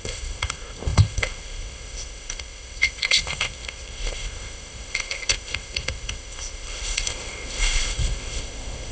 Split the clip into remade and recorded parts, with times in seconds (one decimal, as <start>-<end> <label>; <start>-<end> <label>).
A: 0.0-8.9 remade